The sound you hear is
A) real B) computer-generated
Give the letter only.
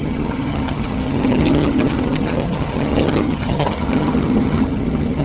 B